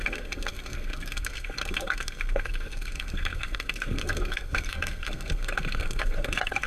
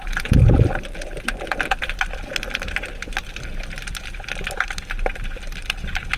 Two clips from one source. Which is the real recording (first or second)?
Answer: second